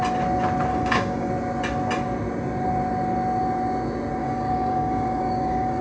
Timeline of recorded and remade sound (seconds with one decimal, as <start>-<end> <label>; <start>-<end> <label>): 0.0-0.7 recorded; 0.7-1.3 remade; 1.3-4.2 recorded; 4.2-5.8 remade